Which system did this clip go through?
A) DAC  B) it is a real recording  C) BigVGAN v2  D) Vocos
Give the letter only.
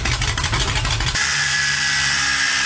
C